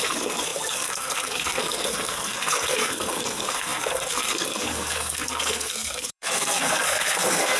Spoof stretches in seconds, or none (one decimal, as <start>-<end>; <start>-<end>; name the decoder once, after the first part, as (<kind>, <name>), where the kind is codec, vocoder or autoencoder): 0.0-7.6 (codec, SNAC)